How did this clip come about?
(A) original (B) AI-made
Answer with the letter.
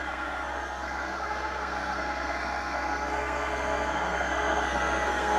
B